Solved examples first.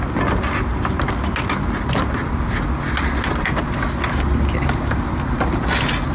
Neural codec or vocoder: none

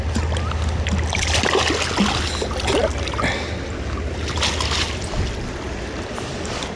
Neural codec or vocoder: none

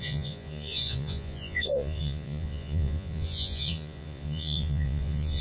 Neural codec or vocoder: vocoder, Vocos